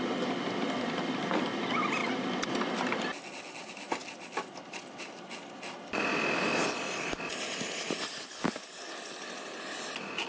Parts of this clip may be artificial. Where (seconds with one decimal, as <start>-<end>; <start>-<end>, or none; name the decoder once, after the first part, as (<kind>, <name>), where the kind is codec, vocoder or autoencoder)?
none